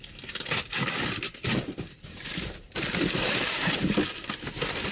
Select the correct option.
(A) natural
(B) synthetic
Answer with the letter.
A